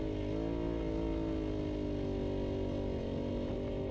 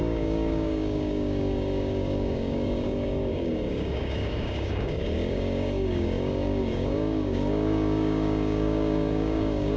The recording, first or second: first